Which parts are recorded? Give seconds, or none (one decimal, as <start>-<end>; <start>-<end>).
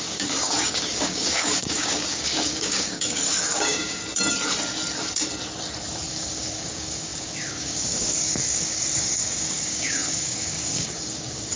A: 4.0-6.1